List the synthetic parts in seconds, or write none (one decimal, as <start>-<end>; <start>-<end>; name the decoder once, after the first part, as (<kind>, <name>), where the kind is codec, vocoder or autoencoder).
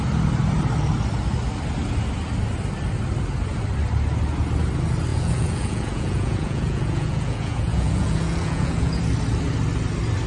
5.1-9.0 (vocoder, Vocos)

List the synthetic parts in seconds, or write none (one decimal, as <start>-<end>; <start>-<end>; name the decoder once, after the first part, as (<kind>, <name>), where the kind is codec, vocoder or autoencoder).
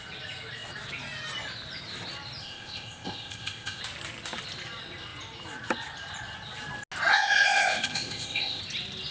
2.4-3.8 (codec, ZipCodec); 7.1-8.6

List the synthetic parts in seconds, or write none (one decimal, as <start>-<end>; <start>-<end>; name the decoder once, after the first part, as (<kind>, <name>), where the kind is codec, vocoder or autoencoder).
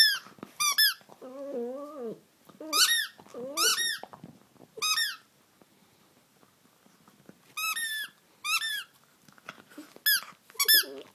none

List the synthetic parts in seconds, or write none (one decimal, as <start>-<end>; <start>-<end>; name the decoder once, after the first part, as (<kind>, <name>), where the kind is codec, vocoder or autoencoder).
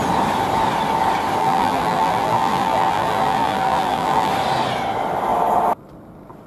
1.4-4.3 (vocoder, BigVGAN v2)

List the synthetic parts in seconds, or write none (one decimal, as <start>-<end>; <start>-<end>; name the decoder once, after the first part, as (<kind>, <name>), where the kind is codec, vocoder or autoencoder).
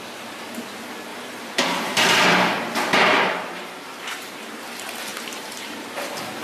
1.1-4.5 (vocoder, BigVGAN v2); 5.1-5.8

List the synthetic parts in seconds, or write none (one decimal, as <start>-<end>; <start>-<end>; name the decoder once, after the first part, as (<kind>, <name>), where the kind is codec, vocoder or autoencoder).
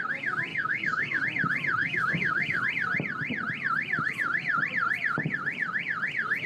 0.5-1.2 (codec, DAC); 1.8-2.6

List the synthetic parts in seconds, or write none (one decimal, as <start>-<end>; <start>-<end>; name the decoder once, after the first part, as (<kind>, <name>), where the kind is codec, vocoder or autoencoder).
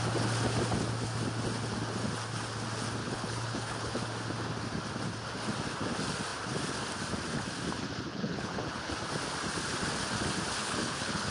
3.0-4.0 (codec, HILCodec); 8.1-8.9; 10.6-11.3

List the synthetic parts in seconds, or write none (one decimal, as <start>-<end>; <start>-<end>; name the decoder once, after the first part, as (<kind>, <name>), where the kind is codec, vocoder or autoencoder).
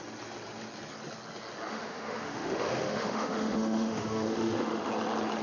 1.7-4.9 (autoencoder, DAC-VAE)